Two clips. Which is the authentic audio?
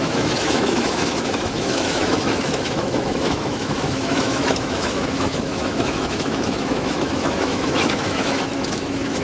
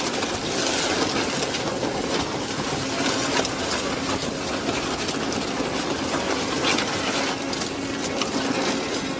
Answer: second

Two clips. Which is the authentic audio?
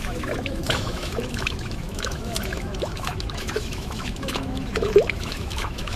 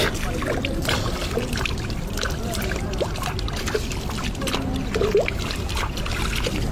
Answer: second